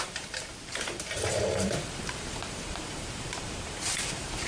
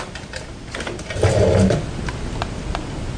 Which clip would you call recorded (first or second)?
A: second